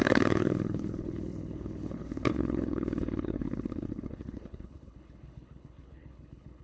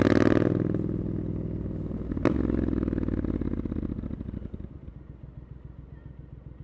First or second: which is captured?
second